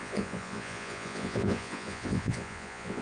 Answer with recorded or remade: remade